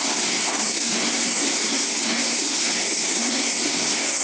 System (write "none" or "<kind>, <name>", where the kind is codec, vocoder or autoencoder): codec, SNAC